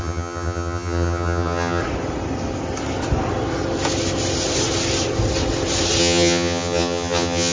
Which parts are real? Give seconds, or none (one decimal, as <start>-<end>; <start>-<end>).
1.8-6.0